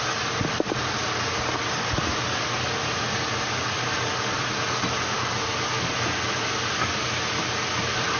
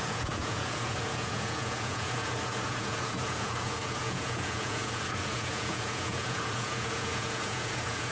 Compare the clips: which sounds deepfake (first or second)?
second